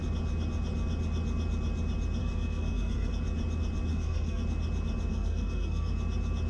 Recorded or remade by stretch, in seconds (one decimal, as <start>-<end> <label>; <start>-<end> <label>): 0.0-2.2 recorded; 2.2-3.1 remade; 3.1-3.9 recorded; 3.9-4.4 remade; 4.4-5.1 recorded; 5.1-5.9 remade; 5.9-6.5 recorded